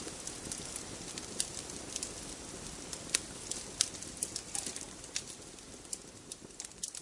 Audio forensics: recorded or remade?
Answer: recorded